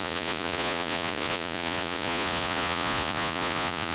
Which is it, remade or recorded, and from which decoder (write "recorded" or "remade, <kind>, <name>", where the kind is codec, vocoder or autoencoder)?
remade, vocoder, Vocos